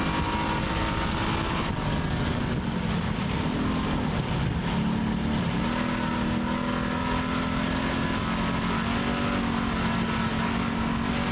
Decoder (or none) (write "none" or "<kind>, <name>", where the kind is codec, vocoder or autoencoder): none